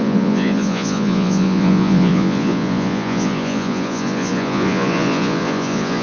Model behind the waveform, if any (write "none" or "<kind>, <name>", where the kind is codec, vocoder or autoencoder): vocoder, Vocos